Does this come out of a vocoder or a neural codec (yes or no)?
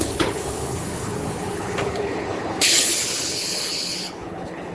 yes